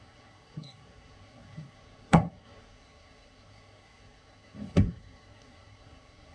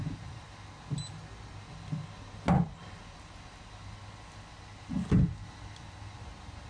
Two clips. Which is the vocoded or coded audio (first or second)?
first